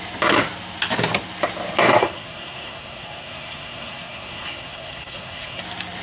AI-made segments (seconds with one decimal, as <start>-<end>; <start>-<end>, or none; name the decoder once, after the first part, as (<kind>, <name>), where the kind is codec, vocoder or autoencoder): 2.0-5.6 (codec, SNAC)

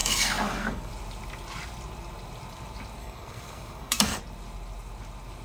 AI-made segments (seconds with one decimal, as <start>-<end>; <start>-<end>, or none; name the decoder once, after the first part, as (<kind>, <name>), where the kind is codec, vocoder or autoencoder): 0.0-0.9 (codec, SNAC); 3.0-4.2